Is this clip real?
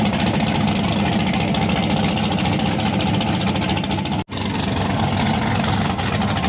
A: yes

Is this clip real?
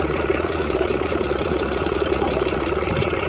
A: no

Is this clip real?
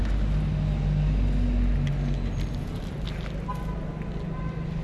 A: yes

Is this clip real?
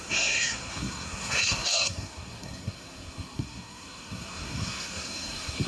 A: no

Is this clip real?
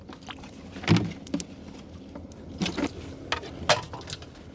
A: yes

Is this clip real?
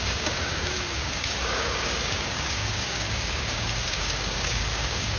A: no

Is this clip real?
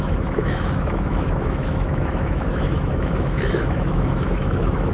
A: no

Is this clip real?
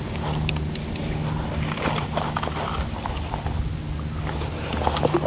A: yes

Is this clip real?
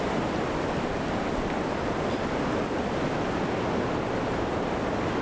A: yes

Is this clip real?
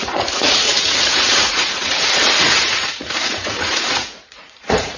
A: no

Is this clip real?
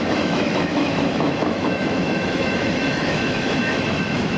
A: no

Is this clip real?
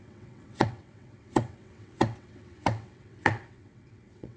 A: no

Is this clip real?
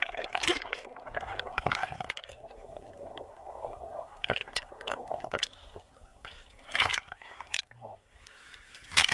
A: no